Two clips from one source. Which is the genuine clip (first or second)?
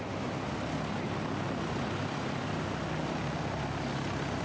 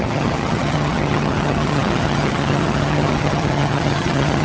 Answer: first